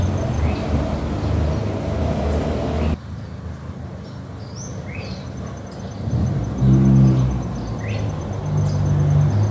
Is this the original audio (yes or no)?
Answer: yes